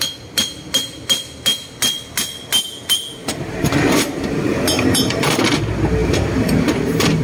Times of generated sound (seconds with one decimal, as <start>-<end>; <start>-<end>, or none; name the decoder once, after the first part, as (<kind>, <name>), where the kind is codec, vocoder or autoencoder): 3.2-5.4 (vocoder, BigVGAN v2); 6.0-7.2